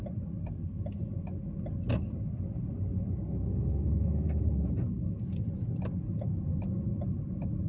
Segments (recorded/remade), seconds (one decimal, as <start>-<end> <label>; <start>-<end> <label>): 0.0-3.5 recorded; 3.5-4.4 remade; 4.4-7.7 recorded